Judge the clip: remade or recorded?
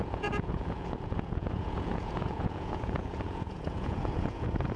remade